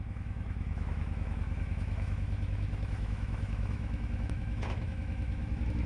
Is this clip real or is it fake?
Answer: fake